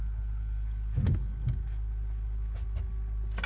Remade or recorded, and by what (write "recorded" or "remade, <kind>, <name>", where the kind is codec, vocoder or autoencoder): recorded